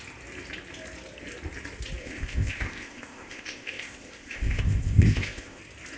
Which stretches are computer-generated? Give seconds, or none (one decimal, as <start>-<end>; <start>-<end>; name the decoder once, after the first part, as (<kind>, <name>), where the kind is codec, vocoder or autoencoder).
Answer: 2.0-5.6 (codec, ZipCodec)